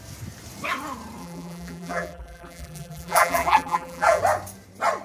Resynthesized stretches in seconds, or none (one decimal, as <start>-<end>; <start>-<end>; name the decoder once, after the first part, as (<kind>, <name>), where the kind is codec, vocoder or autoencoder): 1.2-4.2 (vocoder, BigVGAN v2)